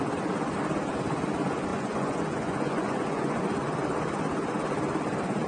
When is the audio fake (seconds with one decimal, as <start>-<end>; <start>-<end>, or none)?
1.7-3.4